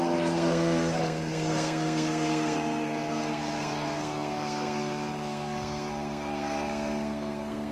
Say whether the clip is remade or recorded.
remade